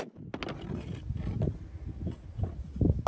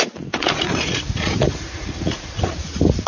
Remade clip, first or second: second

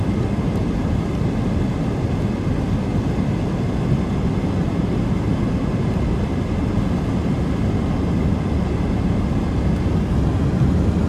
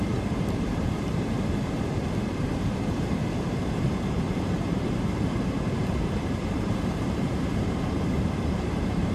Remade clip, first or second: second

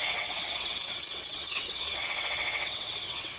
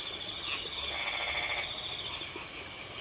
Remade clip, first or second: first